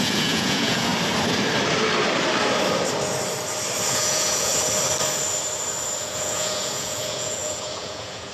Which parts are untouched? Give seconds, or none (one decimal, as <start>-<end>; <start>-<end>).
0.9-3.9; 4.5-6.0